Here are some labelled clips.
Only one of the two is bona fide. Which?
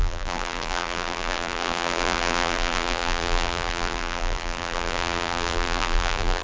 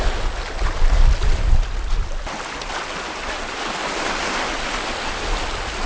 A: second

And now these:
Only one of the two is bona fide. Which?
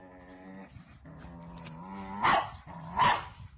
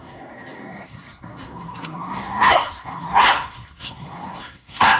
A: first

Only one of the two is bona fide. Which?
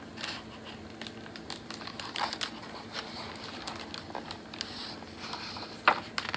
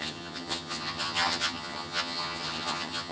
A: first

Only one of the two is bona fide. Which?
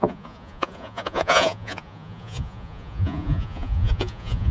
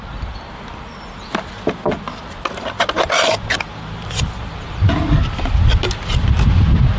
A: second